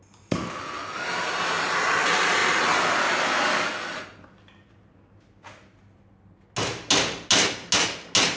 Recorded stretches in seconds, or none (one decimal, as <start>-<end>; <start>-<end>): 0.0-8.4